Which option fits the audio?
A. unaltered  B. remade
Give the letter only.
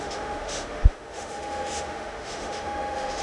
B